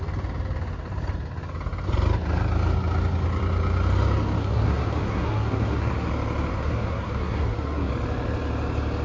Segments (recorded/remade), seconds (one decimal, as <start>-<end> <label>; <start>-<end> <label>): 0.0-4.4 recorded; 4.4-6.1 remade; 6.1-6.5 recorded; 6.5-7.9 remade; 7.9-9.0 recorded